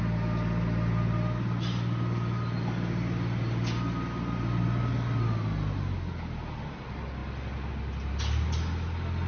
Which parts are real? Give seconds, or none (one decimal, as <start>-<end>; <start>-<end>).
0.0-9.3